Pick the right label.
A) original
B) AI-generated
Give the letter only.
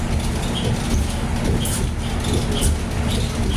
A